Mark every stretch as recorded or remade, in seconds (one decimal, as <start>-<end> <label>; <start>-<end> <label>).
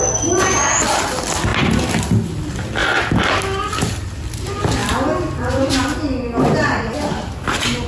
0.0-7.9 recorded